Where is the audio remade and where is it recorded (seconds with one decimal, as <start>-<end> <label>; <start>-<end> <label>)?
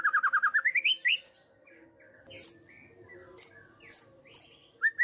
0.0-5.0 recorded